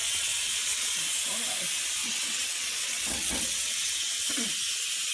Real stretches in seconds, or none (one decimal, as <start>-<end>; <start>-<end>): 1.0-2.0; 4.3-5.1